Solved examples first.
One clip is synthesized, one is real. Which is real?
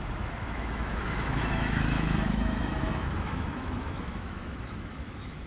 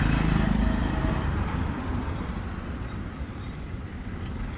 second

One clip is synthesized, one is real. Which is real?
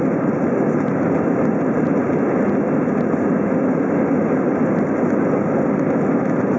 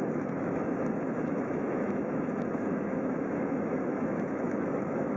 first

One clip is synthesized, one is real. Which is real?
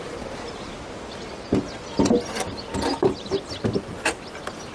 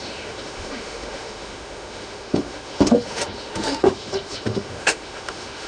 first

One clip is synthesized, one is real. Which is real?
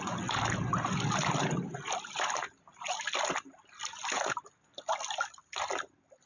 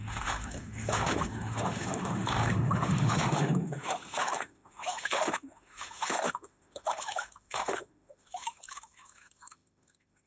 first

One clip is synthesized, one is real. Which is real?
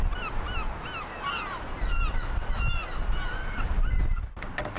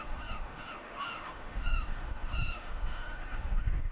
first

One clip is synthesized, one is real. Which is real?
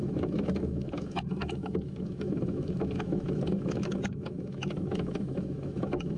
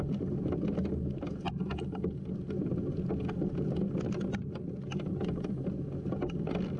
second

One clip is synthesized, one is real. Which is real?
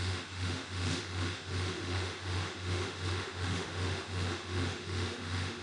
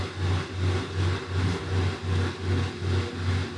second